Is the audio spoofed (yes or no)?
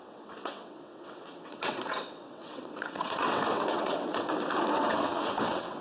yes